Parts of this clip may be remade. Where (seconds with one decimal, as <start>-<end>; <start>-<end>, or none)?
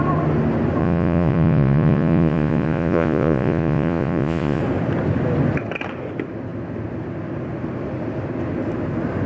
0.8-4.6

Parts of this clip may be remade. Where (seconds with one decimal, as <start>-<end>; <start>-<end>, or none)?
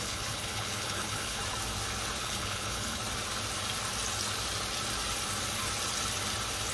0.0-1.4; 2.2-3.0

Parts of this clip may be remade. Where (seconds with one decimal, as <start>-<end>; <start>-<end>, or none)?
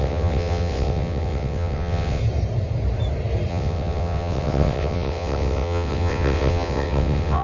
0.0-2.2; 3.5-7.4